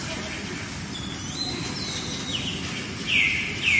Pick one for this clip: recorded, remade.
recorded